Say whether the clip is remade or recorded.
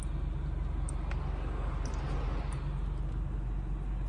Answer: recorded